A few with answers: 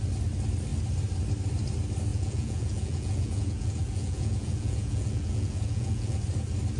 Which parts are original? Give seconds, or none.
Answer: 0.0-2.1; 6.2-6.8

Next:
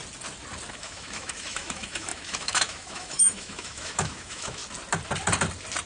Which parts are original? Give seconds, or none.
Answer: 0.0-0.7; 4.6-5.9

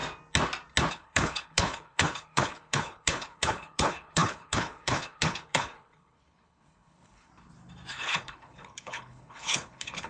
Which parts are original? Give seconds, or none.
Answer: 0.0-0.9; 7.3-7.9

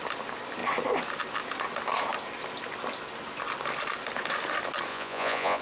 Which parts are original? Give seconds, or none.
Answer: 0.0-4.9

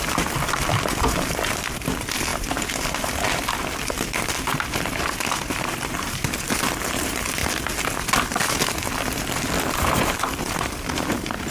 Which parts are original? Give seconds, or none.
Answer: 7.4-9.4